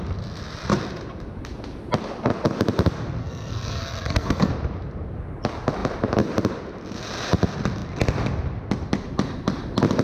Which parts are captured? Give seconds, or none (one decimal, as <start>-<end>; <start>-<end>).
0.0-3.2; 4.5-10.0